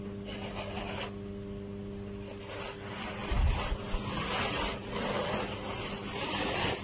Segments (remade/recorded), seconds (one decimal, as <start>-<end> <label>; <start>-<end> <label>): 0.0-6.8 recorded